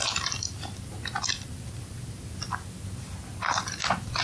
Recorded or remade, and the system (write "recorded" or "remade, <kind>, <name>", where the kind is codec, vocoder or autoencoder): recorded